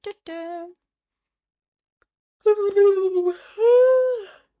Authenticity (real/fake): real